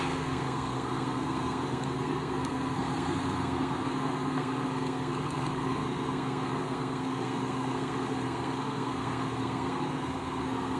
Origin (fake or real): fake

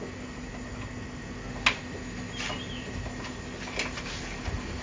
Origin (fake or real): real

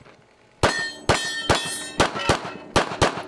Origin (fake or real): real